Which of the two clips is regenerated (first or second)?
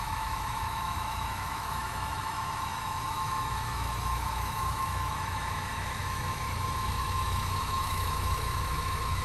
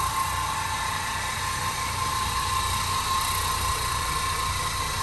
first